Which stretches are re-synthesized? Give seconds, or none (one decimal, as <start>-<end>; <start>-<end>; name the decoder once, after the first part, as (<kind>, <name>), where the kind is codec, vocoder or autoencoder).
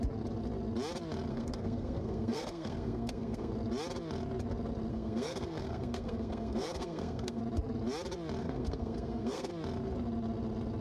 1.3-3.5 (codec, SNAC); 4.9-7.4; 8.4-9.5